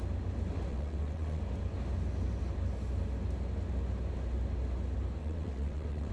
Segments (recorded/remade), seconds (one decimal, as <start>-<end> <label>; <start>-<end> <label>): 0.0-0.7 recorded; 0.7-1.4 remade; 1.4-5.2 recorded; 5.2-6.1 remade